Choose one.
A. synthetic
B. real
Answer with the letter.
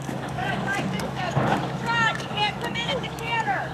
A